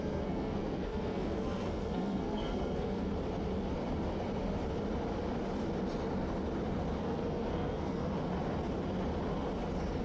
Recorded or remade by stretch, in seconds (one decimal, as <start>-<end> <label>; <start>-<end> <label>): 0.0-3.1 remade; 3.1-7.0 recorded; 7.0-8.1 remade; 8.1-10.0 recorded